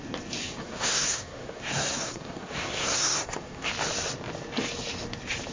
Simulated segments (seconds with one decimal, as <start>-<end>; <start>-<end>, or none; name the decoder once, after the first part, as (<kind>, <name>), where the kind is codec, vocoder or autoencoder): 0.4-3.7 (codec, SNAC)